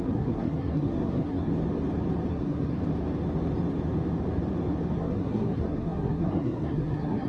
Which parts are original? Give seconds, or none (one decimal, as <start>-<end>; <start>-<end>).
1.5-2.3; 2.8-5.0